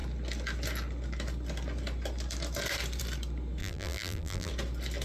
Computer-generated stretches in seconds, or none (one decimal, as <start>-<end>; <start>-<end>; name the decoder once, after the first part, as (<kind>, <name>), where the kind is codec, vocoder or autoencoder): 3.6-4.5 (vocoder, BigVGAN v2)